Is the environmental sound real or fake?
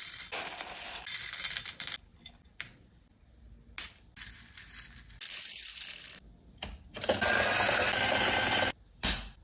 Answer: real